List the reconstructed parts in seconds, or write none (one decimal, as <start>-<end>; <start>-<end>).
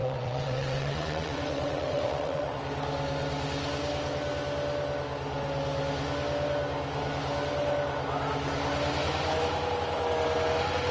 0.0-2.6